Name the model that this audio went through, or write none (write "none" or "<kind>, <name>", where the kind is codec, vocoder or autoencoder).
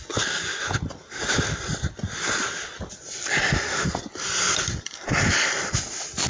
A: none